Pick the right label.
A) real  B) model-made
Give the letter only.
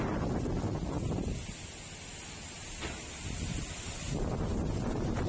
A